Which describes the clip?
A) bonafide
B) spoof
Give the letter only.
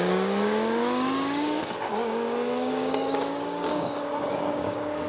B